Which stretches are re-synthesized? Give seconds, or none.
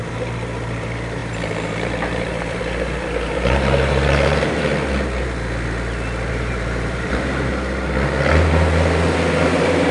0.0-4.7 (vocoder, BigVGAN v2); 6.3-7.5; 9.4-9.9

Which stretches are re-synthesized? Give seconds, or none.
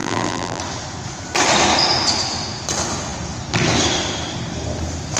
0.0-0.6 (vocoder, BigVGAN v2)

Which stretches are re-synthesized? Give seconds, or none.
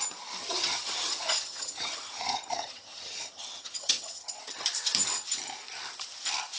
0.4-4.4 (vocoder, HiFi-GAN)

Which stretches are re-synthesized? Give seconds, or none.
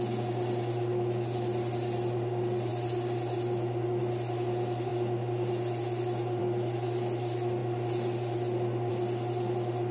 none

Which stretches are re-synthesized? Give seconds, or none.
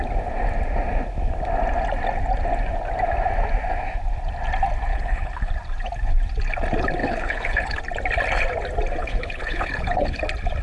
4.9-5.5 (codec, HILCodec); 7.0-7.8; 9.0-10.2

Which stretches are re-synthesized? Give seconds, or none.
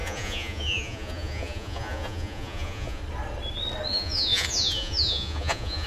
0.0-3.0 (vocoder, Vocos); 3.9-5.9